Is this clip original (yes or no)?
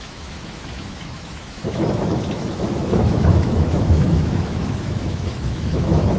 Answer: no